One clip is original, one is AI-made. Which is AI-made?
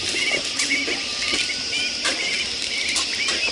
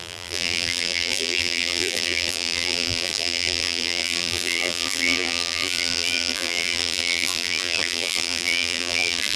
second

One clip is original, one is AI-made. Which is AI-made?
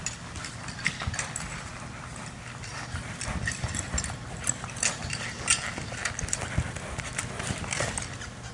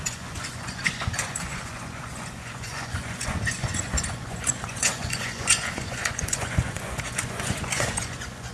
second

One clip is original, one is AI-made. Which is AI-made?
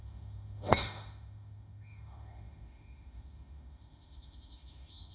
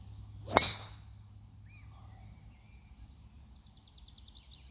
first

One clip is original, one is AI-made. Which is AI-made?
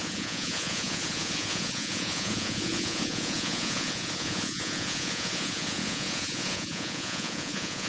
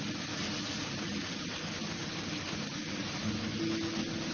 first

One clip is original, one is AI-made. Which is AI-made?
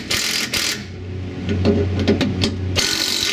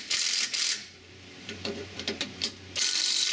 second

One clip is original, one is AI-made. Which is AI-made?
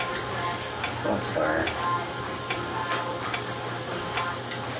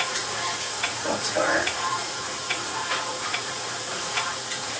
second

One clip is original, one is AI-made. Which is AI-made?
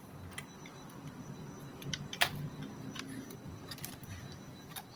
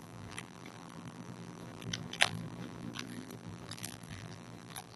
second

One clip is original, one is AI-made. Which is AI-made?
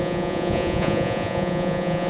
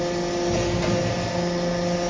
first